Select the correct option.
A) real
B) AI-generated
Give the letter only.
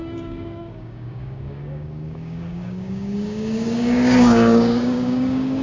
B